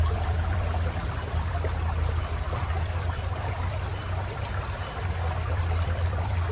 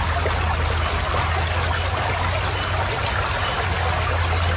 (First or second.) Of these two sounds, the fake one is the first